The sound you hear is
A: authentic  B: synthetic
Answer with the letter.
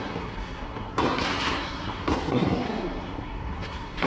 B